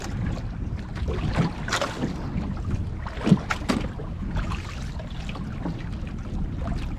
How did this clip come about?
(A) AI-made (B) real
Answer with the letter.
B